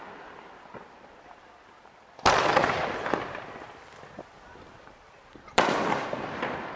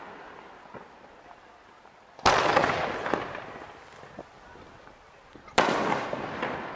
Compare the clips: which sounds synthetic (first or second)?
first